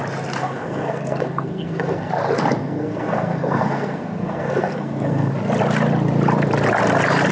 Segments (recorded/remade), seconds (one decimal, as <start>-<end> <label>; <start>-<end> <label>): 0.0-0.4 recorded; 0.4-2.1 remade; 2.1-2.6 recorded; 2.6-5.3 remade; 5.3-7.3 recorded